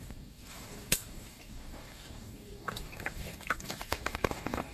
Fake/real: fake